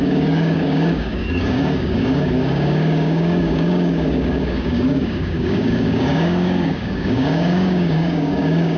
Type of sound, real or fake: fake